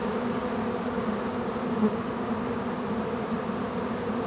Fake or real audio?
real